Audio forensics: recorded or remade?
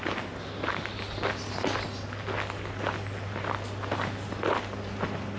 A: recorded